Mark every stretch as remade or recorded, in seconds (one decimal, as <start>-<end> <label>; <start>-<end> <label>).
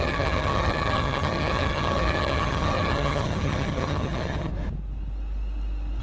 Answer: 0.0-4.5 remade; 4.5-6.0 recorded